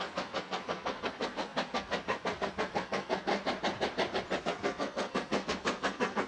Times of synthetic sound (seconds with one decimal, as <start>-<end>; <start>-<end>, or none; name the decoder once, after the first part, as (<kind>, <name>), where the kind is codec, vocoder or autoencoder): 0.0-3.3 (codec, SNAC); 4.4-6.3